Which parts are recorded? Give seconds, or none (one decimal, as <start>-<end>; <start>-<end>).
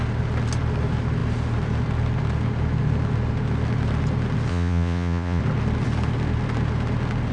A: 0.0-4.5; 5.4-7.3